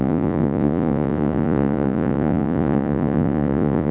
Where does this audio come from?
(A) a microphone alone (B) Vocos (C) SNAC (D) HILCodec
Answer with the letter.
B